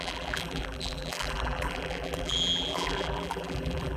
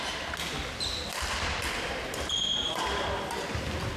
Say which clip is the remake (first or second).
first